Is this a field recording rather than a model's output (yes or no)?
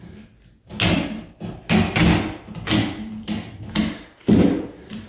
yes